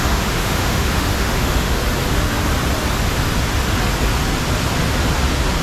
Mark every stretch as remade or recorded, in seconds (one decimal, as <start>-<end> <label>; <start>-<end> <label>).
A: 0.0-1.8 remade; 1.8-5.6 recorded